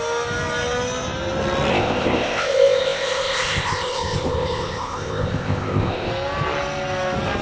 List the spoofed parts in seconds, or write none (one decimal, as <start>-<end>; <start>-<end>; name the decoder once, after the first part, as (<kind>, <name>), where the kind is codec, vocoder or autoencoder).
1.7-6.1 (codec, ZipCodec)